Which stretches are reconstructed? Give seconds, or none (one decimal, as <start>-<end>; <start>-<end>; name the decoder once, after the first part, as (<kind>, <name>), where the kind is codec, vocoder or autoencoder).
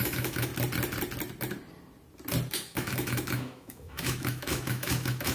0.0-0.5 (autoencoder, DAC-VAE); 2.5-5.3